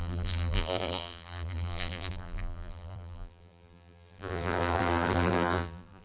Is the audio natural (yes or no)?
no